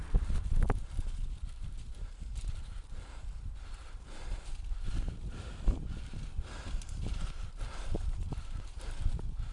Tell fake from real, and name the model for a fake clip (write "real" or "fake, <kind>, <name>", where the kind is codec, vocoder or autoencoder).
fake, vocoder, BigVGAN v2